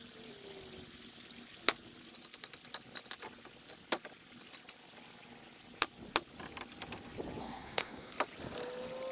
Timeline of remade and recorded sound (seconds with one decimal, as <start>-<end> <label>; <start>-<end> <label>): 0.0-7.4 recorded; 7.4-8.1 remade; 8.1-9.1 recorded